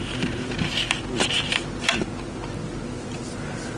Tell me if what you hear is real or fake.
real